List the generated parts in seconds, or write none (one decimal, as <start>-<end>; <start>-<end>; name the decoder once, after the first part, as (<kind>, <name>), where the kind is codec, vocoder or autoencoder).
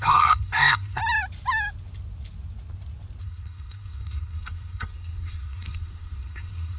0.0-1.0 (codec, SNAC); 3.2-6.8